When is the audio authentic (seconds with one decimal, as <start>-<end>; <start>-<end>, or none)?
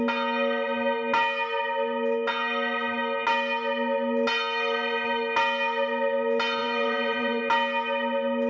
0.0-6.6; 7.4-8.5